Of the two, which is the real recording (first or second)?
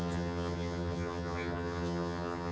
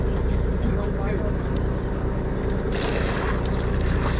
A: second